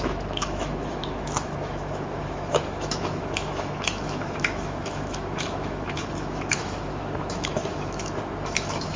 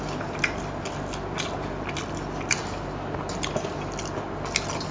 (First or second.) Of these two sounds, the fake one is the first